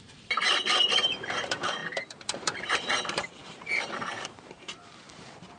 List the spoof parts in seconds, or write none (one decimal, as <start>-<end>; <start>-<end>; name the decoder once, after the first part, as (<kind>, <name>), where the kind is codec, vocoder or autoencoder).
0.0-5.6 (vocoder, BigVGAN v2)